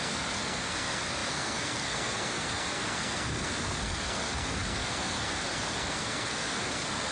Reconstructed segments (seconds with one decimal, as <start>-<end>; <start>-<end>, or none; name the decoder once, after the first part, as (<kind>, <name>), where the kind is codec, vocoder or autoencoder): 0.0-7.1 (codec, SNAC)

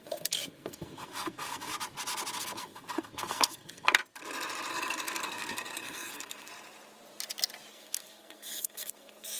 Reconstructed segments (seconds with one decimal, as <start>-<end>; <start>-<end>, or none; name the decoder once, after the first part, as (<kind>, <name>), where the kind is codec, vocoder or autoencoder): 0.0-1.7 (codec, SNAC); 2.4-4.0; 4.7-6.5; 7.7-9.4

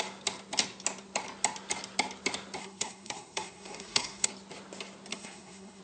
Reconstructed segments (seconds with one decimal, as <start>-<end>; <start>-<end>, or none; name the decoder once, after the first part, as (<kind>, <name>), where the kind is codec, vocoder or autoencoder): 2.6-4.3 (codec, SNAC); 5.1-5.8

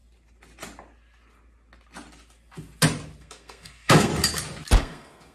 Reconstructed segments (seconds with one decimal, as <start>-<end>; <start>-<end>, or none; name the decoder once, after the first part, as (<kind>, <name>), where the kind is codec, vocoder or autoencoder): 3.2-4.1 (codec, SNAC); 4.8-5.3

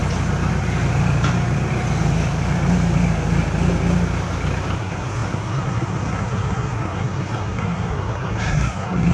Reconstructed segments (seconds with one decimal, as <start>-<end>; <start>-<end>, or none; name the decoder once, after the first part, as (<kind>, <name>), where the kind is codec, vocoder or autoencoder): 4.8-9.1 (codec, SNAC)

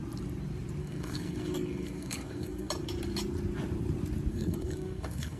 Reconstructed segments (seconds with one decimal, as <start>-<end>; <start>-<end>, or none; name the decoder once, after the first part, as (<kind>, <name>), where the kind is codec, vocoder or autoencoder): 0.8-2.7 (codec, SNAC); 4.3-5.4